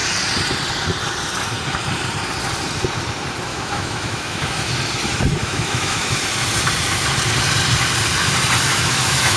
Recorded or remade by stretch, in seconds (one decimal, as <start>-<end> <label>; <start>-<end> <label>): 0.0-3.5 recorded; 3.5-4.7 remade; 4.7-5.4 recorded; 5.4-6.2 remade; 6.2-8.7 recorded; 8.7-9.4 remade